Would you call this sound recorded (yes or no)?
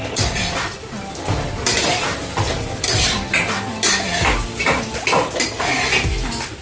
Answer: yes